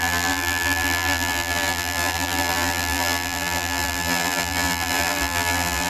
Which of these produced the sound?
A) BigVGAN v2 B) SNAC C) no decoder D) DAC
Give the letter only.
A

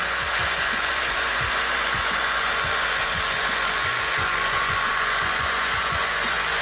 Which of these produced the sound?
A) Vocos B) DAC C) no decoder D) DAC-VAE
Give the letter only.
A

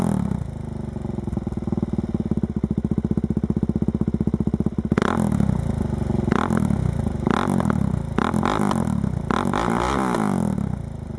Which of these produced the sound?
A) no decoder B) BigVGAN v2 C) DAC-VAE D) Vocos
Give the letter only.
A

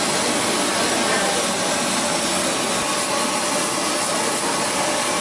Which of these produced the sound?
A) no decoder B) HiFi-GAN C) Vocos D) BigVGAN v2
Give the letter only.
A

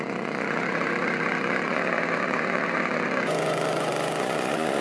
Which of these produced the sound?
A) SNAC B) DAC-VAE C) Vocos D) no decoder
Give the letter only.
C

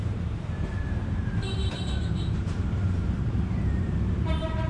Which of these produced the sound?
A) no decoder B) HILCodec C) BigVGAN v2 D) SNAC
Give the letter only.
C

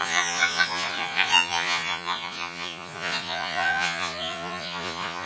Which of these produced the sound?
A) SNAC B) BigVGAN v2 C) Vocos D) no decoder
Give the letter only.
C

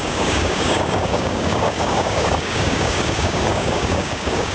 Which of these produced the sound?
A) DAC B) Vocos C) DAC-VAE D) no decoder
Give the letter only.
A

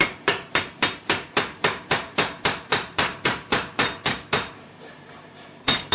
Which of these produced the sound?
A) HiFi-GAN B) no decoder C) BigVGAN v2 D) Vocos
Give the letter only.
C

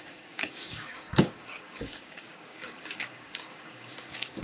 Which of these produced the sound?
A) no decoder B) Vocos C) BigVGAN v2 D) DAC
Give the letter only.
D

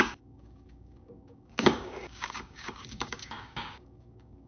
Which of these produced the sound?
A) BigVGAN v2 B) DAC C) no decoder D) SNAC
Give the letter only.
B